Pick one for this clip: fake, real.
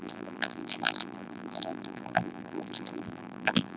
fake